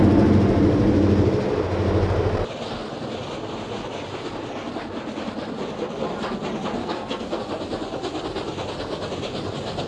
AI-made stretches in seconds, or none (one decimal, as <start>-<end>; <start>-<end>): 6.8-7.4